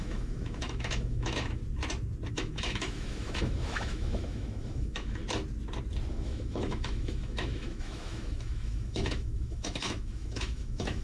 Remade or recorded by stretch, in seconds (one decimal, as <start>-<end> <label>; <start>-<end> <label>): 0.0-1.6 remade; 1.6-2.3 recorded; 2.3-5.2 remade; 5.2-6.1 recorded; 6.1-11.0 remade